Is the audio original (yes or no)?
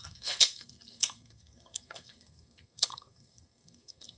no